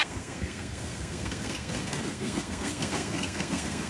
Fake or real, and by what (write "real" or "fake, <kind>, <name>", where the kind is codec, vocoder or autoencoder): fake, codec, SNAC